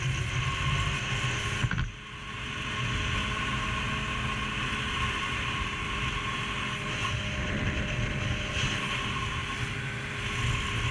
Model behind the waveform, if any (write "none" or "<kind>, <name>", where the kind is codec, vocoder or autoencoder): none